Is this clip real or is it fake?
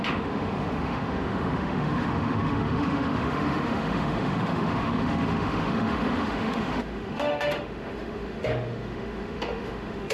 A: fake